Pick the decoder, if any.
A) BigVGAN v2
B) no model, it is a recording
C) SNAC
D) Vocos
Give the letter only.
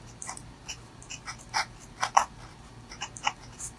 B